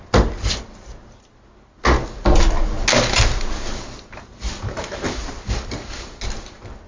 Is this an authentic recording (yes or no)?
yes